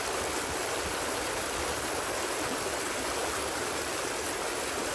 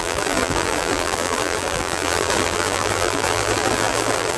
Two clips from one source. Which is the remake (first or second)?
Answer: second